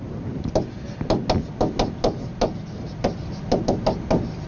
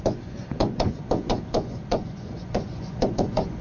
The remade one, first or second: second